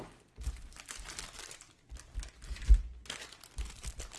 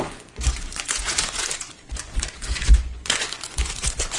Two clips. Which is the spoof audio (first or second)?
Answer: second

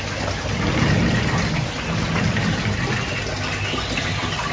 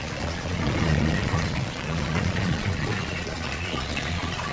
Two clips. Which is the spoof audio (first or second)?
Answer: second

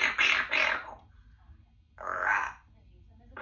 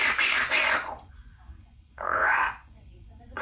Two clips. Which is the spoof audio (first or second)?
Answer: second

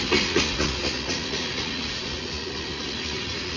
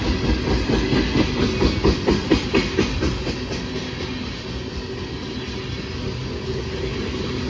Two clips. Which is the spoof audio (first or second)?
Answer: first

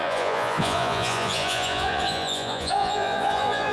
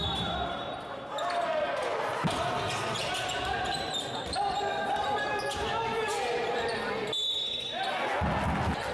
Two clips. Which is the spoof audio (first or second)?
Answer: first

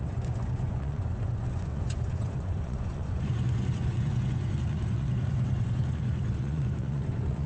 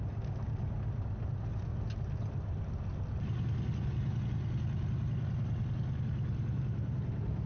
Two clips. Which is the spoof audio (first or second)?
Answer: first